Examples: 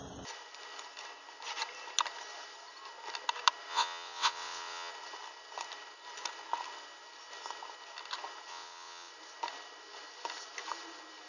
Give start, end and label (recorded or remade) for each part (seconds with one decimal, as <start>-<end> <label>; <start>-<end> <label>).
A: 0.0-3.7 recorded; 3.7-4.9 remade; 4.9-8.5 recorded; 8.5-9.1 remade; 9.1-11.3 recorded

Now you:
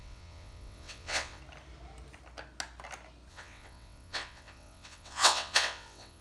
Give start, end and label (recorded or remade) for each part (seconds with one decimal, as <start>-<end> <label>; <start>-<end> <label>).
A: 0.0-1.4 remade; 1.4-3.3 recorded; 3.3-6.2 remade

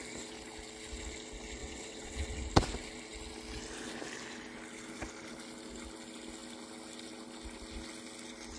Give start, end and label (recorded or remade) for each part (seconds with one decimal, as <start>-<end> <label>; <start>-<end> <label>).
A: 0.0-1.6 recorded; 1.6-2.4 remade; 2.4-8.6 recorded

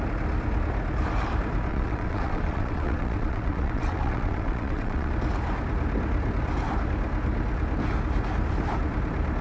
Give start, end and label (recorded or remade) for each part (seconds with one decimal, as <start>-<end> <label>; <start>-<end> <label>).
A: 0.0-1.7 recorded; 1.7-5.1 remade; 5.1-9.4 recorded

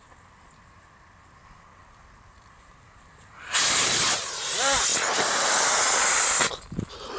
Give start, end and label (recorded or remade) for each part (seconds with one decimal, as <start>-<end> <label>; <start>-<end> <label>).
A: 0.0-7.2 recorded

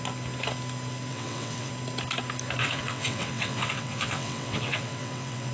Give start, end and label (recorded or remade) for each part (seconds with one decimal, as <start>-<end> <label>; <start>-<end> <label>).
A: 0.0-1.1 recorded; 1.1-1.7 remade; 1.7-2.6 recorded; 2.6-5.5 remade

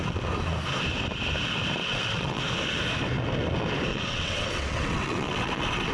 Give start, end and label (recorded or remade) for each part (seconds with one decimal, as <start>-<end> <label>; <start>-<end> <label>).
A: 0.0-1.8 recorded; 1.8-2.4 remade; 2.4-3.9 recorded; 3.9-5.9 remade